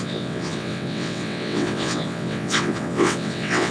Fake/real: fake